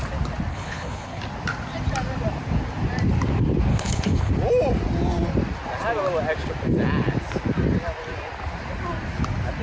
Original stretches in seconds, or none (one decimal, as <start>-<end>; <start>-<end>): 0.0-0.5; 1.2-3.7; 4.3-9.6